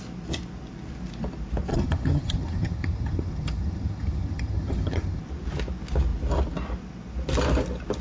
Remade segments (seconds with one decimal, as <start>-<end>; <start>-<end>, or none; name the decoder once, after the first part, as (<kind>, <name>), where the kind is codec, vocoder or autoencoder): 1.7-5.2 (vocoder, HiFi-GAN)